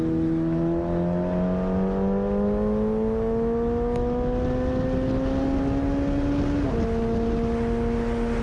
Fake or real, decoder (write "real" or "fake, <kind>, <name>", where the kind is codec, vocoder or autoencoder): real